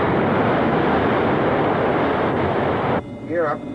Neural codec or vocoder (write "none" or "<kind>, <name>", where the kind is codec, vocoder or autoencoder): none